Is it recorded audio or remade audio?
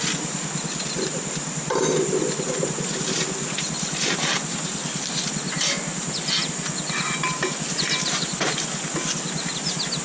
recorded